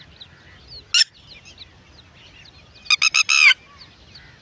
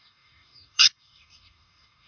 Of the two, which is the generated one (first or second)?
second